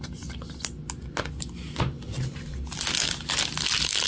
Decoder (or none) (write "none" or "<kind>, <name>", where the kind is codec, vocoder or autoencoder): none